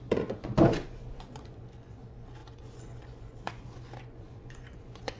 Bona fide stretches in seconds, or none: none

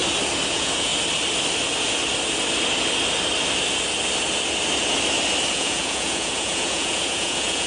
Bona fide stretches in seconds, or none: 0.0-0.5; 0.9-5.5

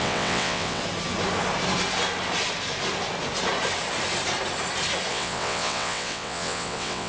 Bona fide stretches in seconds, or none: 0.8-5.1

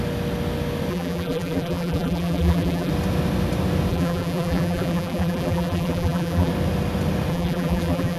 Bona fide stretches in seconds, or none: 0.0-0.9; 2.9-3.9; 6.5-7.3

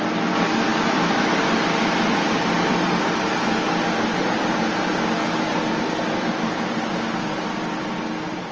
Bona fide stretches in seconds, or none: 0.0-8.5

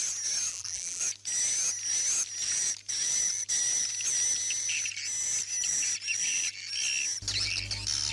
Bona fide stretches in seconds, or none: 0.0-0.5; 1.0-8.1